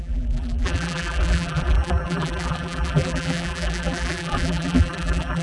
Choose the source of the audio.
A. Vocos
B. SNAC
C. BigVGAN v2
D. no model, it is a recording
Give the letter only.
C